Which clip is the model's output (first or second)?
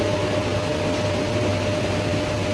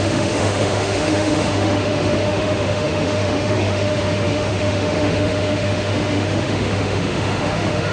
second